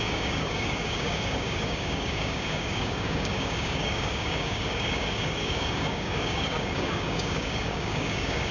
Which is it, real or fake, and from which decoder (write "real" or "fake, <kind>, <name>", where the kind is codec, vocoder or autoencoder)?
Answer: fake, codec, DAC